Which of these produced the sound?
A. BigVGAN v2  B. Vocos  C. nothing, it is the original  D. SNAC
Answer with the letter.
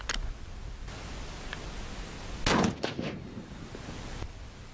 C